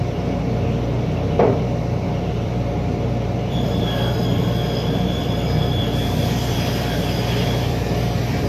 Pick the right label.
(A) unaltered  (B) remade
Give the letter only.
B